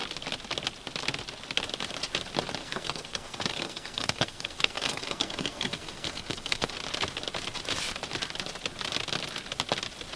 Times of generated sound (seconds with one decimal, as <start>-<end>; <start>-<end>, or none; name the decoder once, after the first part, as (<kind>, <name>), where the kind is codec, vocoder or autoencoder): 2.6-6.7 (codec, SNAC)